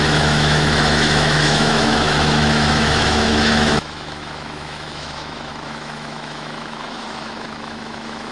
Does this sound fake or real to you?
fake